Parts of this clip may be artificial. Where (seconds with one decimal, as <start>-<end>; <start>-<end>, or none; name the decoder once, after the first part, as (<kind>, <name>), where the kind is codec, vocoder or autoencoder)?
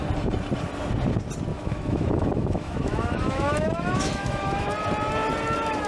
1.5-4.7 (autoencoder, DAC-VAE)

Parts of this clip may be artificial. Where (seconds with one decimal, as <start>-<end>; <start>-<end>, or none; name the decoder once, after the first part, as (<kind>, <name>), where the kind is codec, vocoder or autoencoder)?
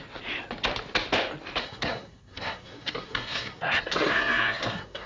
1.6-5.1 (codec, SNAC)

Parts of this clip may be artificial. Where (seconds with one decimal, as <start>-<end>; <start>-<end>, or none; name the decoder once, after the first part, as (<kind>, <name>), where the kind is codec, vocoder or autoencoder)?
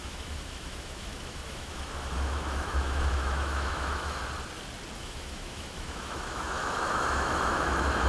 0.0-4.2 (autoencoder, DAC-VAE); 5.0-8.1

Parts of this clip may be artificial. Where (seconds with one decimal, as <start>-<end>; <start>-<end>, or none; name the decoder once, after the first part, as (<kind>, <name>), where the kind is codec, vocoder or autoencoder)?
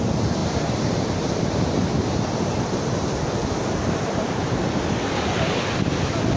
0.4-1.1 (vocoder, BigVGAN v2)